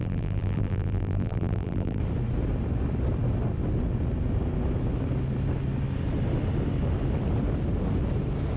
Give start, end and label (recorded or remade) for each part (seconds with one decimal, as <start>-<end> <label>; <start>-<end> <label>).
0.0-2.0 remade; 2.0-8.6 recorded